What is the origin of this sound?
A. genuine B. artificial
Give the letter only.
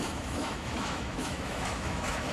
B